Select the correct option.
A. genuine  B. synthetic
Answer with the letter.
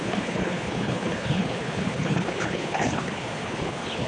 B